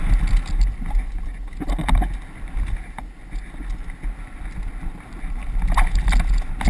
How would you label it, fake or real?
real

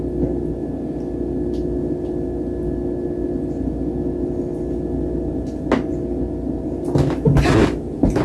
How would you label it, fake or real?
real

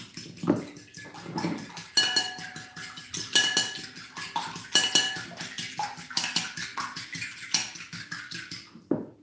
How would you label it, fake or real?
real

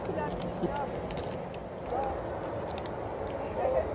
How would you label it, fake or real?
real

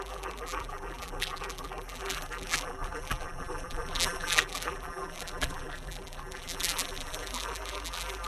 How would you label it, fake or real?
fake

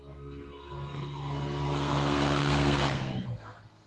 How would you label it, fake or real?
fake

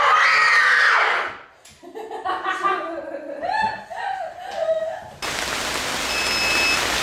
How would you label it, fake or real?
real